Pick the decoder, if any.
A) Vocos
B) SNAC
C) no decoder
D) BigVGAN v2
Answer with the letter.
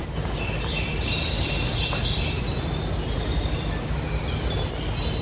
C